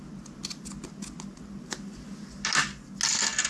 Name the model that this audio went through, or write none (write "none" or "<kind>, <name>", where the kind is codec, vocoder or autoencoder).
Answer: none